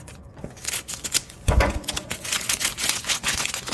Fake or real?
fake